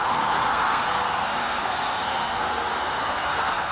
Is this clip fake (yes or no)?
yes